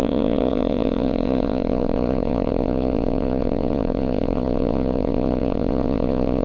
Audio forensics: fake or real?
fake